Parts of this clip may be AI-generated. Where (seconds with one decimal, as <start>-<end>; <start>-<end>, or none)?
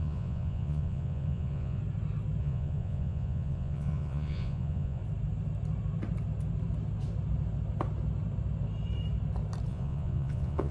0.0-1.8; 2.4-5.0; 9.7-10.7